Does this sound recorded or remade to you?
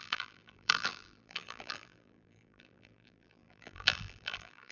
remade